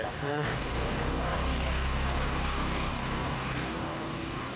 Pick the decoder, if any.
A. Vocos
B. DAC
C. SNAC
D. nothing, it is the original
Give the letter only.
B